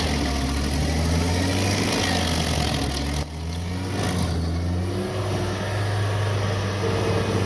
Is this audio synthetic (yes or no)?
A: no